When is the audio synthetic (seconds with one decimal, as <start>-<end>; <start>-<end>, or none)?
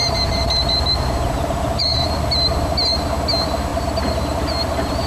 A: 0.0-2.2; 3.7-5.1